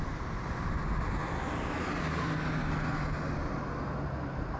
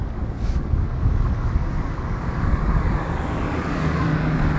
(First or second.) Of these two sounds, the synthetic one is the second